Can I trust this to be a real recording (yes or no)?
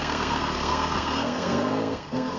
no